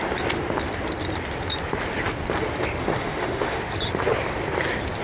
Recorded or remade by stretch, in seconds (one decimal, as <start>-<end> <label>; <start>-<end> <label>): 0.0-2.8 recorded; 2.8-3.6 remade; 3.6-5.0 recorded